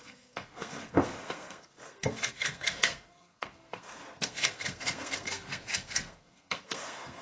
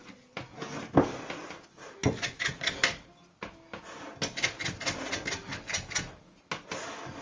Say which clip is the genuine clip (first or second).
second